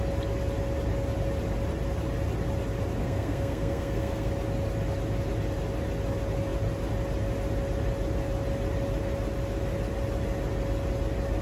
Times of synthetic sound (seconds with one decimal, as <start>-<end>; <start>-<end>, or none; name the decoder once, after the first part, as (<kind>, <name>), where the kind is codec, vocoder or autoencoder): 3.0-4.3 (codec, SNAC)